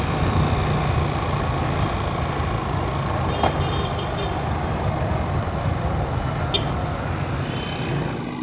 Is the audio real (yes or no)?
yes